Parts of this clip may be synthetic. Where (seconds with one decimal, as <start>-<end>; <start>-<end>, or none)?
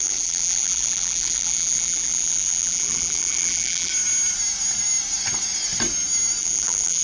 0.0-3.9; 6.4-7.0